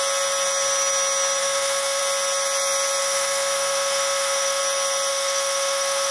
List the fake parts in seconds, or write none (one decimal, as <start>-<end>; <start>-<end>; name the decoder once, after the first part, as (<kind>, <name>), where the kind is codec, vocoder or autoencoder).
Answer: 1.4-2.0 (autoencoder, DAC-VAE); 3.0-4.6; 5.1-6.1